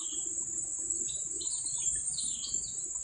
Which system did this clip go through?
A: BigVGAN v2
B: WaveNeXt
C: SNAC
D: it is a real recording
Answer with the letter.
D